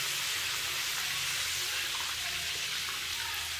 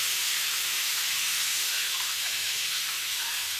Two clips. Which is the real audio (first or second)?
first